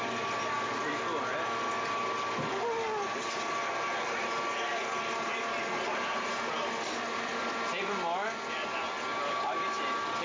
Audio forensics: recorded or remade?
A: recorded